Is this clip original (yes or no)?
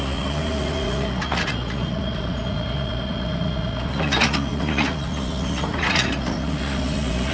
no